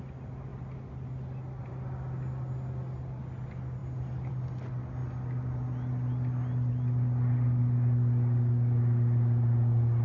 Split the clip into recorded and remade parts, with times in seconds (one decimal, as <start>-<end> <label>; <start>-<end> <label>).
0.0-10.0 recorded